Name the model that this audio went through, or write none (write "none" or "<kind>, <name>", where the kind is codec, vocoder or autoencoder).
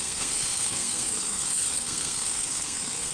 codec, SNAC